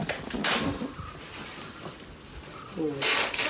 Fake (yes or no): no